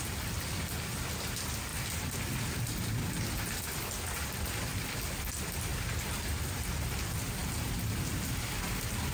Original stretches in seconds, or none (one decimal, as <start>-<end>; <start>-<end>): 0.0-1.7; 3.0-4.7; 5.3-5.7; 6.7-9.1